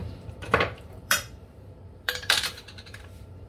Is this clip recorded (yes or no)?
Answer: no